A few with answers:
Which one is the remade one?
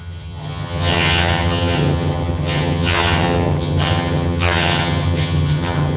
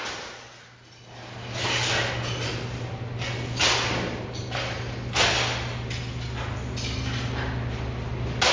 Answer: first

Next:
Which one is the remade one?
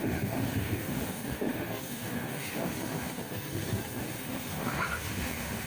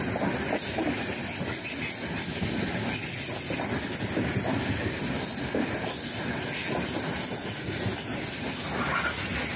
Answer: first